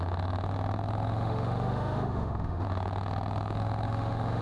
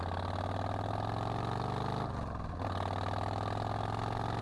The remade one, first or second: first